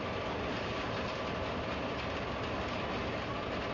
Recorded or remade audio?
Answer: recorded